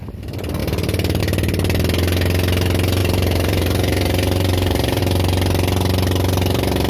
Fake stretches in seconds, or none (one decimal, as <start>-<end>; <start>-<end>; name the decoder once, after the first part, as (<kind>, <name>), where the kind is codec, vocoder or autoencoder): 0.6-1.2 (vocoder, BigVGAN v2); 3.0-5.0